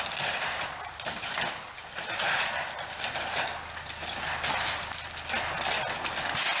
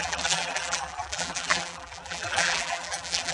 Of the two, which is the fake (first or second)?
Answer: second